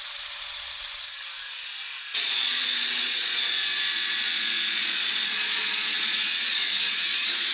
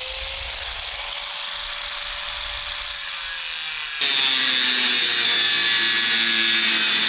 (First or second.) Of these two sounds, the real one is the second